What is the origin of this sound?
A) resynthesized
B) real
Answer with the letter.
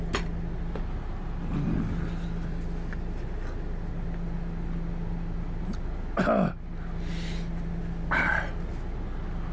B